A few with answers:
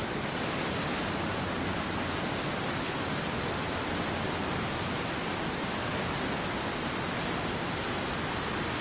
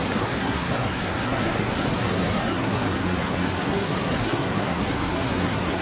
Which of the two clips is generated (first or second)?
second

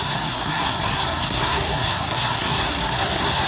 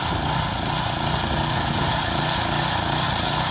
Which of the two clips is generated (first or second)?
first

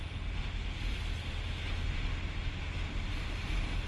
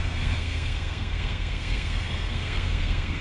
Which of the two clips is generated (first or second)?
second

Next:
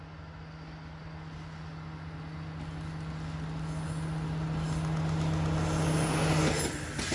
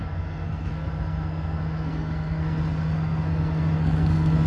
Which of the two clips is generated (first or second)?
second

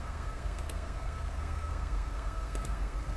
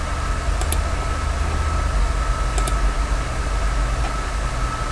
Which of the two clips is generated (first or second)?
first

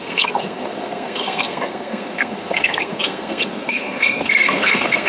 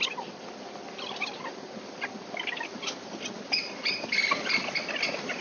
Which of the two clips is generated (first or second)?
first